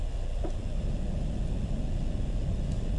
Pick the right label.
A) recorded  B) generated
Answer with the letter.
A